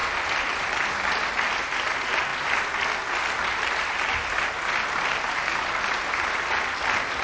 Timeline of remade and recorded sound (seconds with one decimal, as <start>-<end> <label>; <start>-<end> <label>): 0.0-0.9 remade; 0.9-7.2 recorded